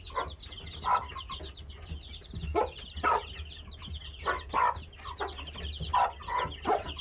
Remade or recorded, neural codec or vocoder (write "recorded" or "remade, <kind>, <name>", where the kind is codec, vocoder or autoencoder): recorded